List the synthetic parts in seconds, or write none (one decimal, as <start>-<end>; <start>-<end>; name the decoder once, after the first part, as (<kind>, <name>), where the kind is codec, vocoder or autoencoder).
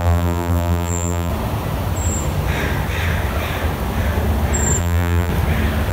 0.0-1.3 (vocoder, BigVGAN v2); 4.8-5.3